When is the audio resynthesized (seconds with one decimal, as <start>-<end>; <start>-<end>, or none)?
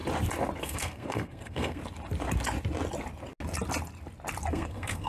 0.6-1.8; 4.5-5.1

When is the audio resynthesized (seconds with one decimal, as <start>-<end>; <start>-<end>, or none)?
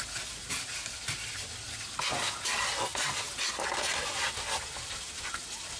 none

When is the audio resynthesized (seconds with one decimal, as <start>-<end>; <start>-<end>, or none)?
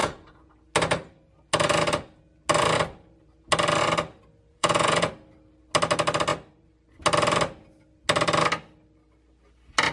0.0-0.5; 4.5-5.1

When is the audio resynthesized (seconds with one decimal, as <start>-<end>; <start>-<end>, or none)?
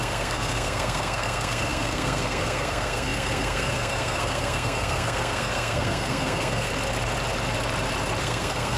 0.0-6.7; 8.2-8.8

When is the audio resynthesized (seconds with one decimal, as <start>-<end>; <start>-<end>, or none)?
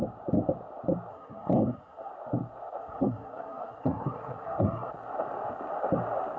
1.1-2.1; 2.8-4.9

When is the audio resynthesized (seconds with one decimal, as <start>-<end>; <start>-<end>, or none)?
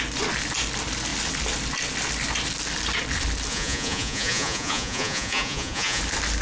3.5-6.0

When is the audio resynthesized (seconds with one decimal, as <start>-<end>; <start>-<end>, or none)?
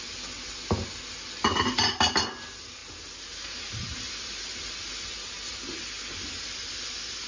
none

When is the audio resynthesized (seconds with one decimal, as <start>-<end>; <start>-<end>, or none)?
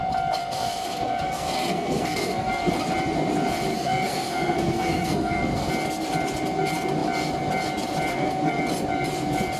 0.4-2.7; 3.7-5.7; 8.1-8.6